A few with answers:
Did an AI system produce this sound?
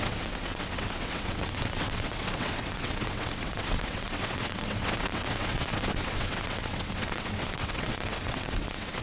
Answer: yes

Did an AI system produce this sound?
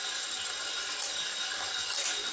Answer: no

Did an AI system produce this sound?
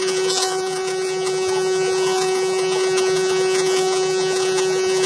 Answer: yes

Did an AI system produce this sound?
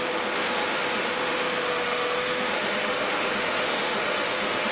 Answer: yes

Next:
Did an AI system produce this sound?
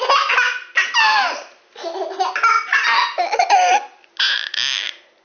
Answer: no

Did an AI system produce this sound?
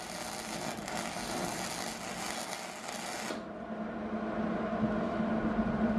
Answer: no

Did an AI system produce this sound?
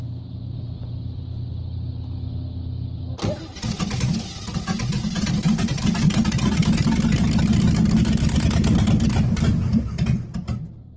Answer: no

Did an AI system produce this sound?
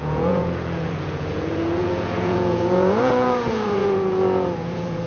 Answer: yes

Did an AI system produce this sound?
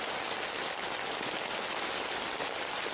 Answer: no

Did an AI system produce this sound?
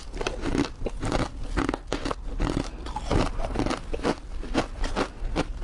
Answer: no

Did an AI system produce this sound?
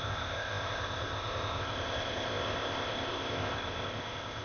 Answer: yes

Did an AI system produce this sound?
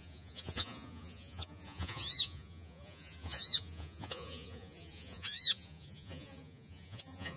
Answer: yes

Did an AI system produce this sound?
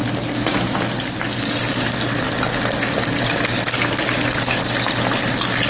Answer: no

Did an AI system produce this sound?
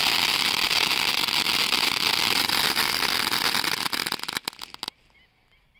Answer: no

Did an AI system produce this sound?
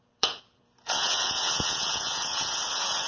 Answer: yes